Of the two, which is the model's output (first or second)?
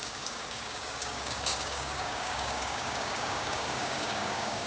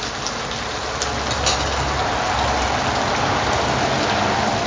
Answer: first